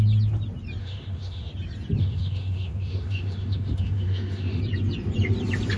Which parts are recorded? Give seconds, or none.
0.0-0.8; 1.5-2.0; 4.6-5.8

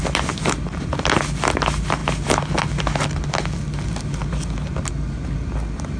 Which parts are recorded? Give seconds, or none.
0.0-6.0